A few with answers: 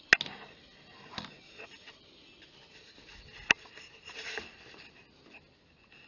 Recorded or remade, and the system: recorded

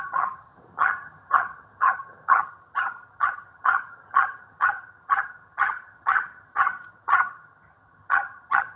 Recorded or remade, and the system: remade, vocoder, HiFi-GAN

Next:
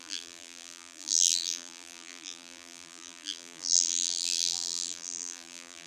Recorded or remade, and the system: remade, vocoder, BigVGAN v2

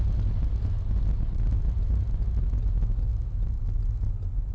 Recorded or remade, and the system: recorded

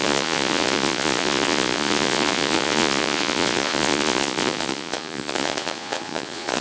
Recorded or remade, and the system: remade, vocoder, Vocos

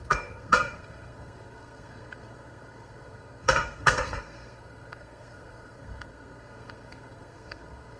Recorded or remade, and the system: remade, codec, SNAC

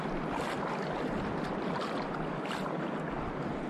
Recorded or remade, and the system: recorded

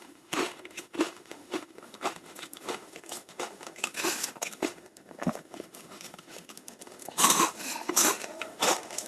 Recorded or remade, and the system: remade, autoencoder, DAC-VAE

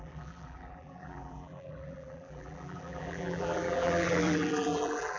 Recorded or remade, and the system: remade, vocoder, BigVGAN v2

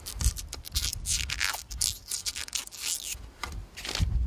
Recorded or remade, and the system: recorded